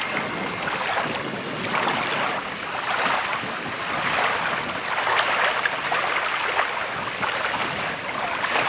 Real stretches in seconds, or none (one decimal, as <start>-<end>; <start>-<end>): 0.0-3.3; 4.1-8.7